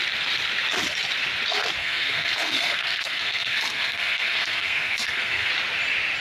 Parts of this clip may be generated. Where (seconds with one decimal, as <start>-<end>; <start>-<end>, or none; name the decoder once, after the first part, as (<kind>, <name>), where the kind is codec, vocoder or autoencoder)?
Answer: 1.8-5.5 (codec, SNAC)